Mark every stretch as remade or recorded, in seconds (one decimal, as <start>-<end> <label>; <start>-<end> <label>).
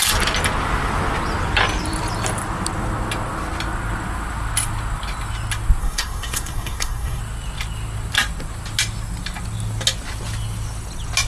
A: 0.0-5.8 recorded; 5.8-7.2 remade; 7.2-11.3 recorded